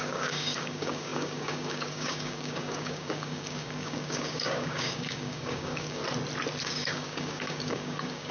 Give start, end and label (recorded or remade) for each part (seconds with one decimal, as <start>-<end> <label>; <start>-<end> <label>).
0.0-6.0 remade; 6.0-6.6 recorded; 6.6-8.3 remade